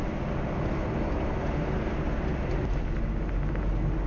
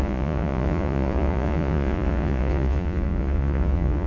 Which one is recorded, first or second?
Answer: first